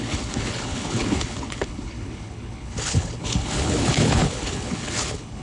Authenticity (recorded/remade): remade